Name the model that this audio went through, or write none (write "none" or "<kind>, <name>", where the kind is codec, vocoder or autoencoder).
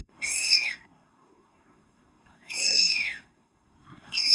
codec, SNAC